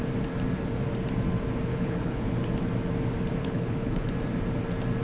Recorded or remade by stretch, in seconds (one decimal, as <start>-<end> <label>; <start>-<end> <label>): 0.0-1.7 recorded; 1.7-2.3 remade; 2.3-3.4 recorded; 3.4-4.1 remade; 4.1-5.0 recorded